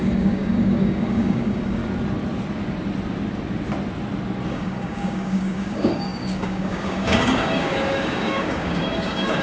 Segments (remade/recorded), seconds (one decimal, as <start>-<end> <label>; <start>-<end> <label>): 0.0-1.8 remade; 1.8-4.5 recorded; 4.5-9.4 remade